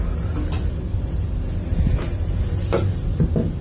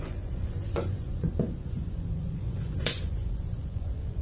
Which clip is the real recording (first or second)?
first